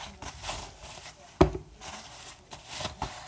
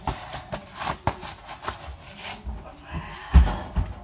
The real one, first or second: second